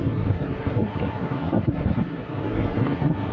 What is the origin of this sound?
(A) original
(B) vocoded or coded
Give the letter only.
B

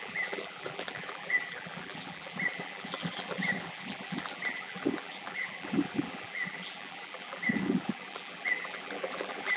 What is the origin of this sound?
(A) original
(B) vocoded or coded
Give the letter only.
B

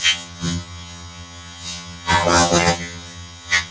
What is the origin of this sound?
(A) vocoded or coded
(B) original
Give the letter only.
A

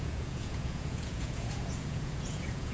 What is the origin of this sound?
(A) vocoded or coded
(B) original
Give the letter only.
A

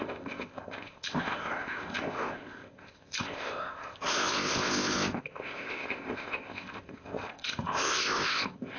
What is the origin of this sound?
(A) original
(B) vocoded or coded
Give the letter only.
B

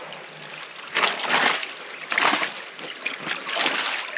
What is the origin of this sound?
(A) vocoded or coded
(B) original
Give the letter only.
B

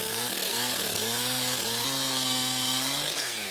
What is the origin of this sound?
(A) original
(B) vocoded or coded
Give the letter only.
B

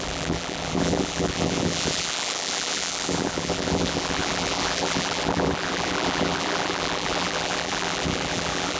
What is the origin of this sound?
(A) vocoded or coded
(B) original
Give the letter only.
A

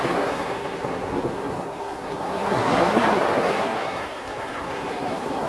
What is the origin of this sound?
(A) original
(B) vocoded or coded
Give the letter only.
B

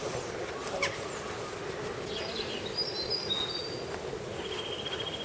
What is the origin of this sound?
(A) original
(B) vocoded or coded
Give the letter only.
A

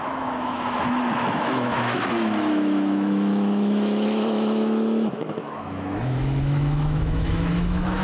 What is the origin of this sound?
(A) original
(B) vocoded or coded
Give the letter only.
B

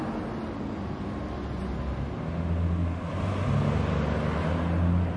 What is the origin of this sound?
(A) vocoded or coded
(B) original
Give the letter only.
B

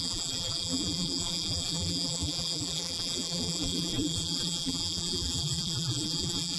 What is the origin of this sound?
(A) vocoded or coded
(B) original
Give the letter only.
A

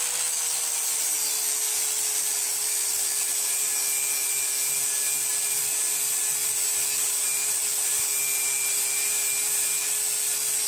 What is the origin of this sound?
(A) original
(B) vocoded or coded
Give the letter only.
A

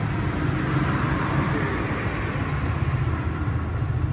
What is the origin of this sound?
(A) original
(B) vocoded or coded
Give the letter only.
A